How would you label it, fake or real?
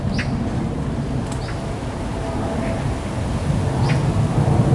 real